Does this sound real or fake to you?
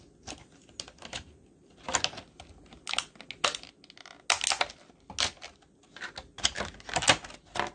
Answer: real